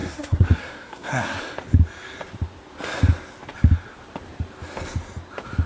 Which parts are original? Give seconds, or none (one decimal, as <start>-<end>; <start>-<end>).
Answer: 1.4-5.7